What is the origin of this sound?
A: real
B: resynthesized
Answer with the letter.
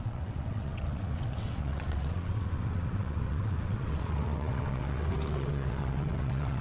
B